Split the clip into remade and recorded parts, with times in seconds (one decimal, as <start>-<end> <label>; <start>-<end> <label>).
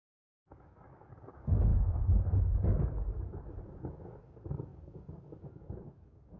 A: 0.0-6.4 remade